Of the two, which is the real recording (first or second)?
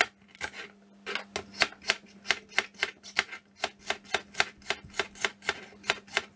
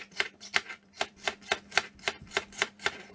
first